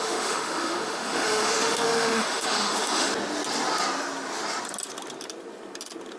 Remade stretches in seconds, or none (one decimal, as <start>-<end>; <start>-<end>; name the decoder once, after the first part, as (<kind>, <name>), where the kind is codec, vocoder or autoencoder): 0.0-3.1 (autoencoder, DAC-VAE)